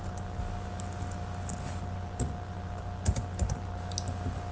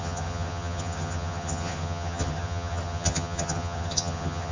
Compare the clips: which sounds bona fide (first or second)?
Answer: first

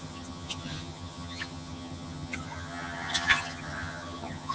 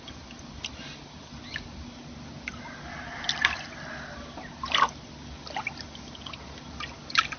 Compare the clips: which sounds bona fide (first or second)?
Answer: second